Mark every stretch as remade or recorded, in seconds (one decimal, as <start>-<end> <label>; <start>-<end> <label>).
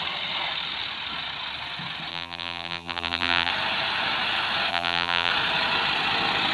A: 0.0-2.1 recorded; 2.1-3.5 remade; 3.5-4.7 recorded; 4.7-5.3 remade; 5.3-6.5 recorded